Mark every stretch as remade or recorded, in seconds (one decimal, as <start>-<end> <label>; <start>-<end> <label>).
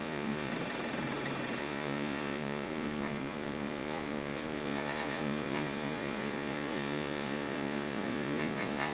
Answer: 0.0-0.5 remade; 0.5-1.6 recorded; 1.6-8.9 remade